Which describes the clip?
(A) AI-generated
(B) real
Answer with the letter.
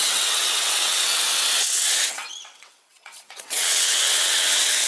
A